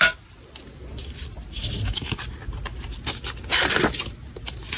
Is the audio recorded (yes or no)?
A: yes